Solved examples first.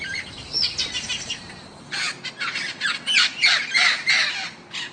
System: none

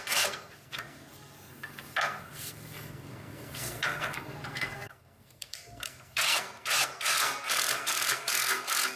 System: codec, SNAC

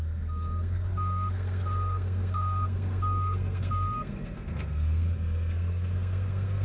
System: codec, SNAC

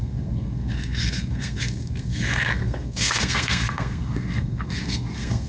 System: codec, SNAC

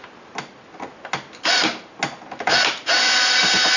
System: none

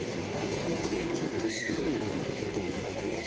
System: codec, SNAC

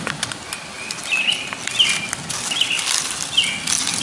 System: none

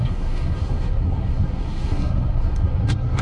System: codec, SNAC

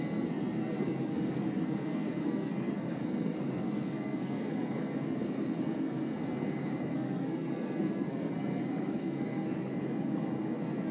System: codec, SNAC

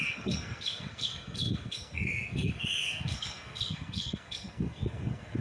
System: codec, SNAC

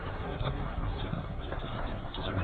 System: codec, SNAC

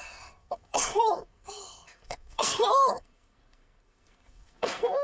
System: codec, SNAC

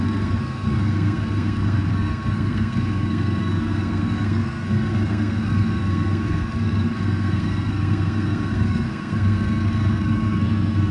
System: codec, SNAC